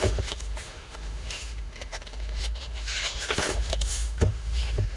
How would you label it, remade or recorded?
remade